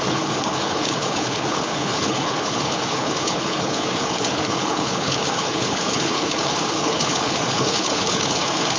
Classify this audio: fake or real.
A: fake